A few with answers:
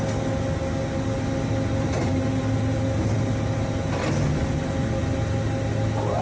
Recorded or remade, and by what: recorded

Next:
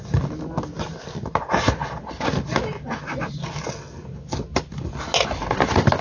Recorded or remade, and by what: recorded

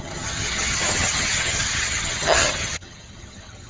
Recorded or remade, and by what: remade, vocoder, HiFi-GAN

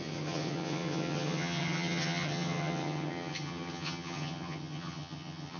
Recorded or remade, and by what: remade, vocoder, HiFi-GAN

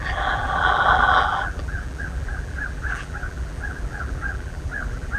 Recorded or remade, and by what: remade, vocoder, BigVGAN v2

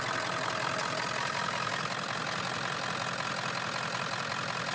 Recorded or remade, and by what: recorded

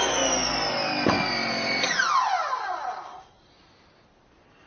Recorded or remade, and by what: recorded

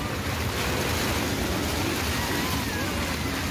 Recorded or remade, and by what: recorded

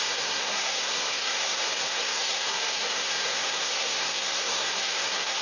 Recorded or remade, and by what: remade, codec, SNAC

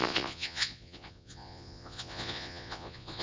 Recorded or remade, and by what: remade, vocoder, Vocos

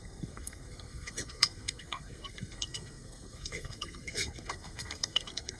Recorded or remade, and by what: remade, codec, SNAC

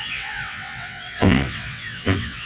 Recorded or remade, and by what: remade, vocoder, WaveNeXt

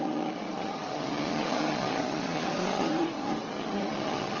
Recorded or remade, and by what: remade, vocoder, Vocos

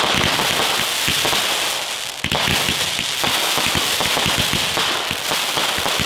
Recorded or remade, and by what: recorded